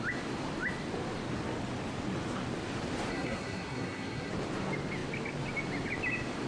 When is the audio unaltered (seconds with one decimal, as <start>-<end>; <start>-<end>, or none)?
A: 0.0-3.1; 4.3-6.5